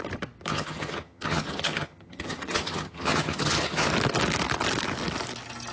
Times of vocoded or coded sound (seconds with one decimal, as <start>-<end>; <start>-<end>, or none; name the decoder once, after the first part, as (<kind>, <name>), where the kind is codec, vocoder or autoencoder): 0.5-3.9 (vocoder, HiFi-GAN)